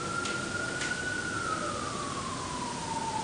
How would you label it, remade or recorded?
recorded